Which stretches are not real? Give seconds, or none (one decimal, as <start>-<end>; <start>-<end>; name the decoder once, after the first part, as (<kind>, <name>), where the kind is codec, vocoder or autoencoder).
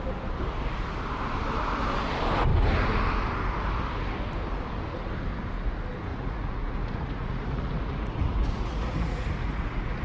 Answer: 6.1-10.0 (vocoder, Vocos)